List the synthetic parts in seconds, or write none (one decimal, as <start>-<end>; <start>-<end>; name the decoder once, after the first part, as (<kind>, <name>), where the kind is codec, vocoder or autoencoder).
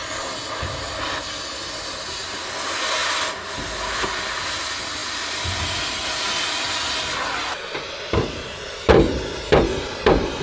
none